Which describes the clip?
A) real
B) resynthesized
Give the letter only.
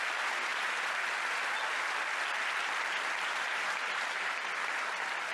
A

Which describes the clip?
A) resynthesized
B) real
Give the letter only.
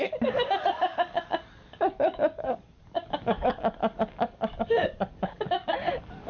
A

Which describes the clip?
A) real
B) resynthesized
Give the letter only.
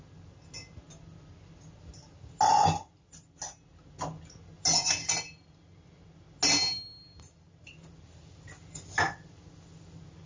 A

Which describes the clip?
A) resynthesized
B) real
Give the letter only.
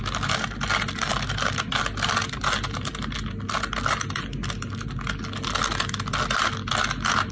B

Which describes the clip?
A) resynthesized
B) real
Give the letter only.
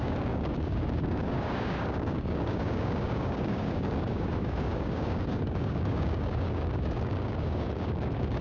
A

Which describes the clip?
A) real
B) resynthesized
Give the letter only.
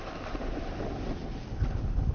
A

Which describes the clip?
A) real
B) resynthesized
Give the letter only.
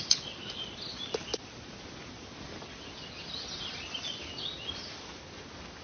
A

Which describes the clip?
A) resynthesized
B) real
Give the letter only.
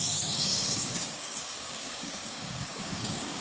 A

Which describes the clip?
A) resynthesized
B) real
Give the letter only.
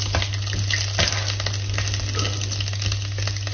B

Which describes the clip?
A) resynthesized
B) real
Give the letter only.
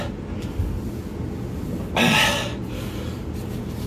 B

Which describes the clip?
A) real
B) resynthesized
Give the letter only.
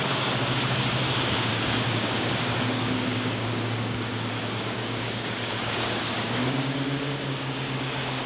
B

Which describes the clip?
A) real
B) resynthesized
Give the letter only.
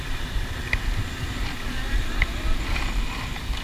A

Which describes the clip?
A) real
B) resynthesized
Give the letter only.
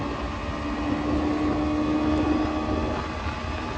A